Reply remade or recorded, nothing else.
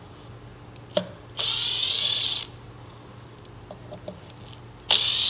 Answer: recorded